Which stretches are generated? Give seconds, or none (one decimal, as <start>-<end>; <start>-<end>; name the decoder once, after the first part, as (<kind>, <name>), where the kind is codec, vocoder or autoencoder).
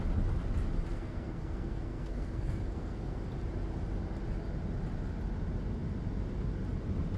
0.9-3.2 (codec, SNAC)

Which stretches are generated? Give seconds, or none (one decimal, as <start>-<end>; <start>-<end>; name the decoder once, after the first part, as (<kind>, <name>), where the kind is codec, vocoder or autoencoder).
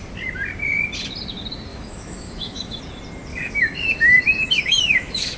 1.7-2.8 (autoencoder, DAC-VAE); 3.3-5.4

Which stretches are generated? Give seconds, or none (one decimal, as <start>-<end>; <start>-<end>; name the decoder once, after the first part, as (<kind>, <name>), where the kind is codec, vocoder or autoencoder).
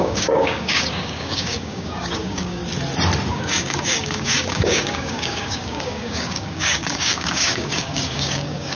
0.0-2.6 (codec, DAC); 3.3-8.7